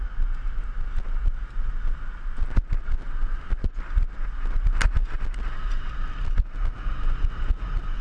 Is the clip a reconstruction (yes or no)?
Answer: no